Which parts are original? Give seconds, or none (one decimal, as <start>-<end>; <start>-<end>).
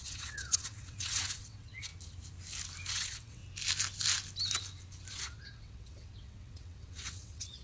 1.9-2.9; 3.4-5.1